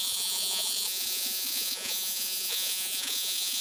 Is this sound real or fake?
fake